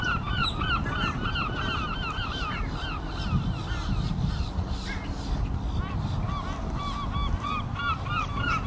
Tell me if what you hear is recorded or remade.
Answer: recorded